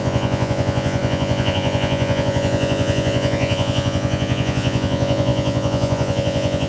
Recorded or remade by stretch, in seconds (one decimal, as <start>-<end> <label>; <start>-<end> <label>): 0.0-6.7 remade